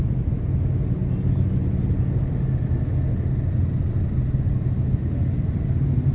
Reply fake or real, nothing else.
real